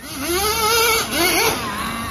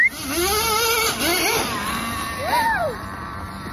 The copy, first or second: second